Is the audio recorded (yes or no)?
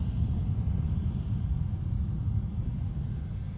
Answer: yes